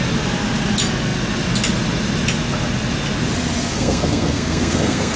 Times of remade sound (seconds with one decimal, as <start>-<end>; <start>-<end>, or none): 3.7-5.2

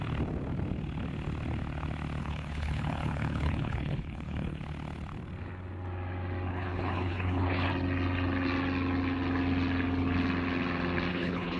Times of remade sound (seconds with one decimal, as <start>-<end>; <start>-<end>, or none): 2.2-4.6; 6.5-7.7; 11.1-11.6